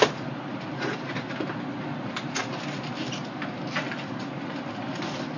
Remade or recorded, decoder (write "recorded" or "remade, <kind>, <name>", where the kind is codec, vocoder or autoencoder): recorded